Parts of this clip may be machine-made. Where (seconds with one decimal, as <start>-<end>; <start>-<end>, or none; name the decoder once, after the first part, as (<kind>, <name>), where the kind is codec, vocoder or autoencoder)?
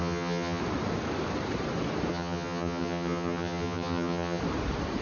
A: 0.0-0.6 (vocoder, HiFi-GAN); 2.1-4.4